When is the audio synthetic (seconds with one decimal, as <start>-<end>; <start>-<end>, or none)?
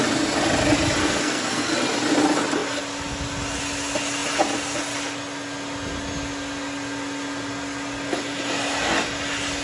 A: 1.0-1.7